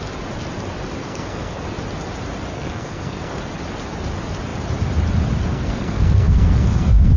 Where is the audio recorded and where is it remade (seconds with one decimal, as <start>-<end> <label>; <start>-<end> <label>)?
0.0-1.0 recorded; 1.0-1.6 remade; 1.6-2.5 recorded; 2.5-3.4 remade; 3.4-5.5 recorded; 5.5-7.2 remade